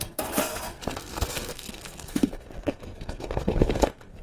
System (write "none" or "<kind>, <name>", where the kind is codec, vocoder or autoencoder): codec, SNAC